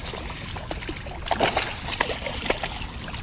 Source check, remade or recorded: recorded